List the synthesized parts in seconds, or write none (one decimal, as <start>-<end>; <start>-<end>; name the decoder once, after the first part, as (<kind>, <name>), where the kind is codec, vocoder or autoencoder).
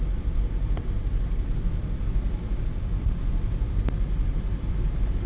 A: 0.0-5.3 (vocoder, BigVGAN v2)